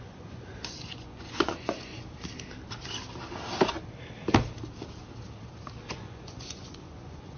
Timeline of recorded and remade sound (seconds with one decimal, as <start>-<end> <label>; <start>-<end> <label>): 0.0-1.9 remade; 1.9-5.9 recorded; 5.9-7.4 remade